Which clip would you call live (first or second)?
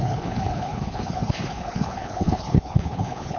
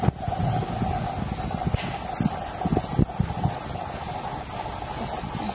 second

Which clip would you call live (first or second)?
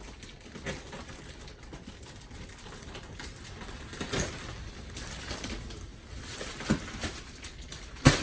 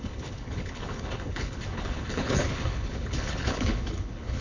first